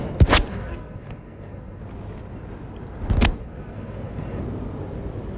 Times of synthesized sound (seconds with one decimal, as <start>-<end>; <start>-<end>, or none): 0.5-1.8; 3.4-4.4